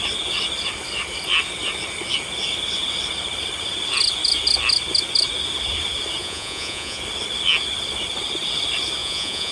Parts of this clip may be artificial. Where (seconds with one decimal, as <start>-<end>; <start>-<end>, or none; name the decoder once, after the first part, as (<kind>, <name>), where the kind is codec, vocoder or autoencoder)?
6.2-7.0 (vocoder, Vocos); 9.0-9.5